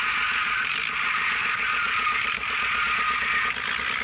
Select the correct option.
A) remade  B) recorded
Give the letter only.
B